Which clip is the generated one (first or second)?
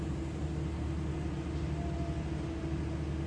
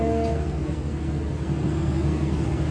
second